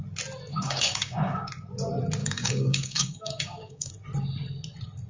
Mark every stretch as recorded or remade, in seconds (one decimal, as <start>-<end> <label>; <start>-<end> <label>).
0.0-0.5 recorded; 0.5-1.5 remade; 1.5-2.2 recorded; 2.2-3.9 remade; 3.9-5.1 recorded

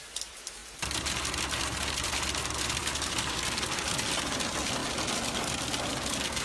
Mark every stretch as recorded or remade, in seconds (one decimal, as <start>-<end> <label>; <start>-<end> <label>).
0.0-2.8 recorded; 2.8-3.4 remade; 3.4-6.4 recorded